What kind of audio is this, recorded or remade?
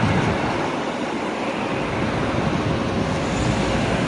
recorded